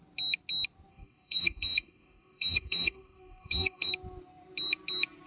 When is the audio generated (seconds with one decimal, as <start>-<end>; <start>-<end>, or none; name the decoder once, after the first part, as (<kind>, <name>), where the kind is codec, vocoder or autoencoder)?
0.9-3.9 (codec, DAC)